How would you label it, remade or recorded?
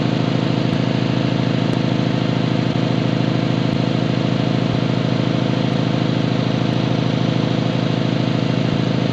recorded